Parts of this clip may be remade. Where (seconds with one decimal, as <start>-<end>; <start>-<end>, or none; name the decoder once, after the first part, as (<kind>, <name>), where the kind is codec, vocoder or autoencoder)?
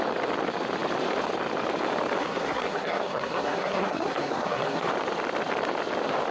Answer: 2.2-4.9 (codec, SNAC)